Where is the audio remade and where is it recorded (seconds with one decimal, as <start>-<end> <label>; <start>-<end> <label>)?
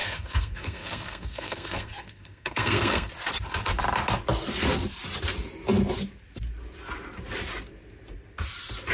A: 0.0-3.1 remade; 3.1-8.9 recorded